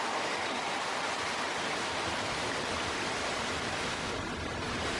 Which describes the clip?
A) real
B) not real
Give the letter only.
A